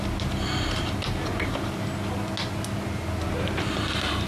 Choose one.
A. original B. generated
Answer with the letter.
A